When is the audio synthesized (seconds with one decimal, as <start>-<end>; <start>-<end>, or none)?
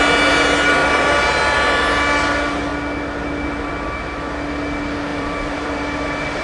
0.8-1.9; 5.1-6.4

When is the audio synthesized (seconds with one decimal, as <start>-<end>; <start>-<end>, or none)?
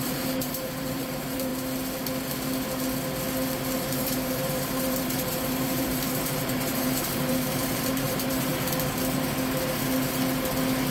0.0-1.5; 3.8-8.5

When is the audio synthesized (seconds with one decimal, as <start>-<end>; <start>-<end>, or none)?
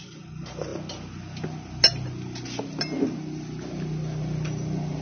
none